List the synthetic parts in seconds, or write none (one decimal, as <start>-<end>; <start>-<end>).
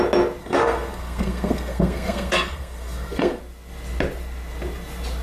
0.4-3.4